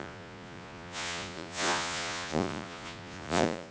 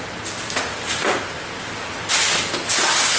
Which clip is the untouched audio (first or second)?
second